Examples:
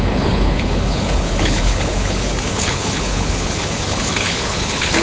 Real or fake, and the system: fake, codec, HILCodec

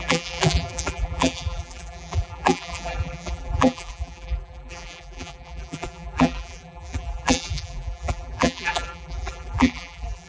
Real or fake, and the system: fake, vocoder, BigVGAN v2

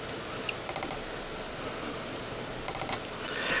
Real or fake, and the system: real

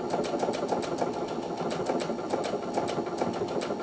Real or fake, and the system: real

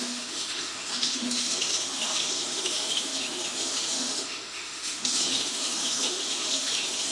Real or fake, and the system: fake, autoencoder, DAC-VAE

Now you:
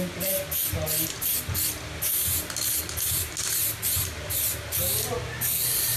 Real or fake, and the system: real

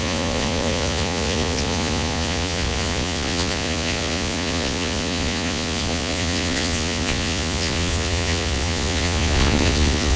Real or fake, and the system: fake, vocoder, Vocos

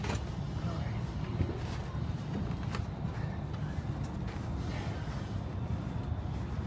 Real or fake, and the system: real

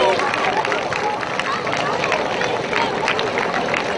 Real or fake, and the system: real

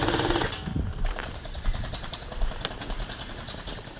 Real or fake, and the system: real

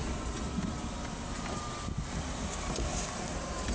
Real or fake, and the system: real